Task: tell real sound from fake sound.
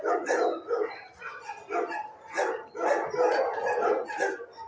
real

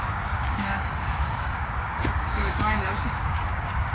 fake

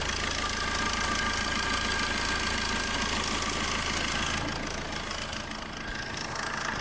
real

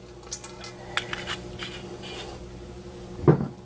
real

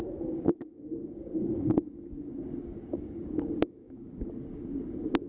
fake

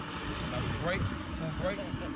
real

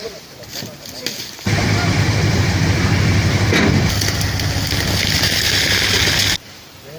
real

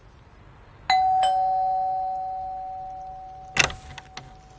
real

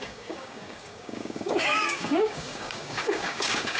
fake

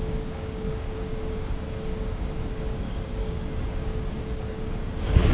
fake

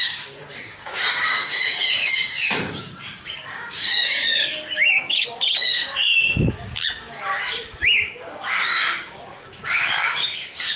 fake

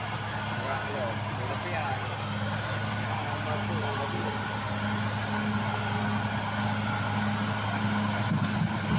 real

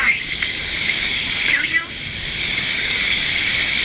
fake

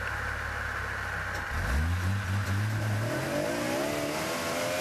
real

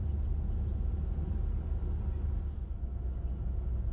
real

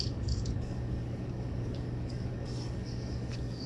fake